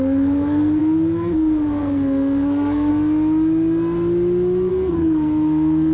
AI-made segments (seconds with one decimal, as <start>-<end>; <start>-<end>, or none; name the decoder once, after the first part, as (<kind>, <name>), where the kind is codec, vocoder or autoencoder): 0.0-2.9 (codec, SNAC); 4.7-5.9